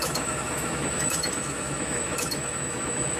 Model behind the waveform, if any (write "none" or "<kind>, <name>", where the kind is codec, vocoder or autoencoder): autoencoder, DAC-VAE